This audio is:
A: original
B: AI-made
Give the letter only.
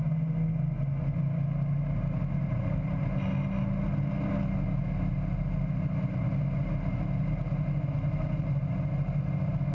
A